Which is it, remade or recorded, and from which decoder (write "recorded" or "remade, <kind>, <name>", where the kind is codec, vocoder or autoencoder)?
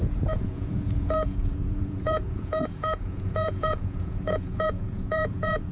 remade, vocoder, Vocos